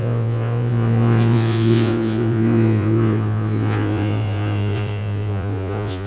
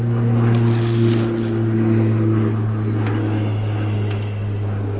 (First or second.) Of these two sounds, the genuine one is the second